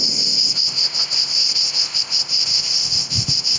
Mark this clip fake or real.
fake